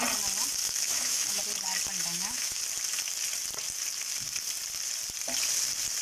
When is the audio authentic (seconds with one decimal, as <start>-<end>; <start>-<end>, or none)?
0.0-0.6; 1.4-2.0; 2.6-6.0